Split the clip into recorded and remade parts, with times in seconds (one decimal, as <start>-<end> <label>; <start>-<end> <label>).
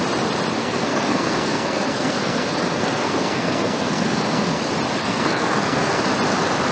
0.0-0.6 recorded; 0.6-4.6 remade; 4.6-5.0 recorded; 5.0-6.0 remade; 6.0-6.7 recorded